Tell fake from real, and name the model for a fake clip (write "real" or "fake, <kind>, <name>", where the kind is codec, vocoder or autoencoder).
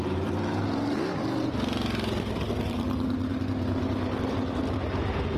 real